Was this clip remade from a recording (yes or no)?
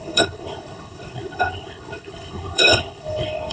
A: yes